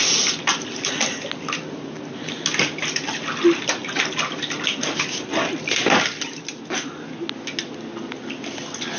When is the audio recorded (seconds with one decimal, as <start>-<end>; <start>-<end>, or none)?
0.0-9.0